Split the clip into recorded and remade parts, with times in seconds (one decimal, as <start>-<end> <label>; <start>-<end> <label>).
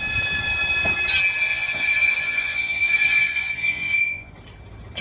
0.0-1.5 recorded; 1.5-4.3 remade; 4.3-5.0 recorded